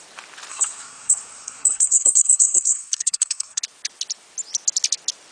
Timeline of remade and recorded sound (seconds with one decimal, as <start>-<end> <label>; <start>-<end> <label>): 0.0-0.5 recorded; 0.5-3.6 remade; 3.6-5.3 recorded